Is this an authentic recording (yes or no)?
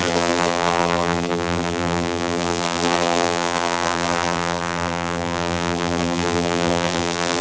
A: no